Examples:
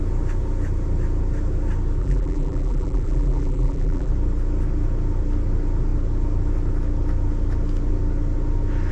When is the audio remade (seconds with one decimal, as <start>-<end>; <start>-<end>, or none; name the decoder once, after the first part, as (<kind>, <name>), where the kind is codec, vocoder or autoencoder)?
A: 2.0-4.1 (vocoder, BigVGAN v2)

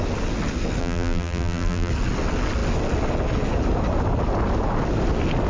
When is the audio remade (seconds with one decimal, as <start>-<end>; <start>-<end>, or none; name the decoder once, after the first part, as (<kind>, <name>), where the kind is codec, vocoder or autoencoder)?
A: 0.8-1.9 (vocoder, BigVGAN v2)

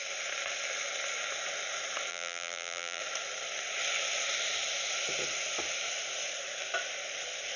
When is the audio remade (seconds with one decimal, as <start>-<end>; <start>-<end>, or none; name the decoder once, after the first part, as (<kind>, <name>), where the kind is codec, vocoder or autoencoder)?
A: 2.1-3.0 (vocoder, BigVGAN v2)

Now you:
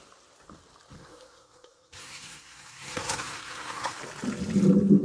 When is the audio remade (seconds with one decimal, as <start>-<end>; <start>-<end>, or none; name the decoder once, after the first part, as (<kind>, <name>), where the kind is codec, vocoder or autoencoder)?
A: 1.0-4.0 (codec, SNAC)